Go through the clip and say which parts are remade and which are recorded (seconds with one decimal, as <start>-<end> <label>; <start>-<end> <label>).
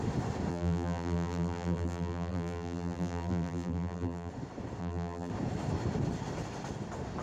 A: 0.0-0.5 recorded; 0.5-4.3 remade; 4.3-4.8 recorded; 4.8-5.3 remade; 5.3-7.2 recorded